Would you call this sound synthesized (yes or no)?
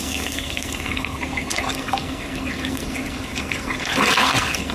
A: yes